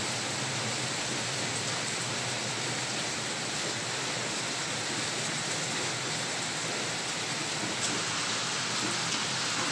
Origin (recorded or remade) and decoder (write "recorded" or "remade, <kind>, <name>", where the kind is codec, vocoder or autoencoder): recorded